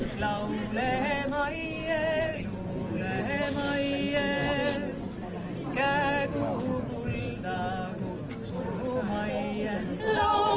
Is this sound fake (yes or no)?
no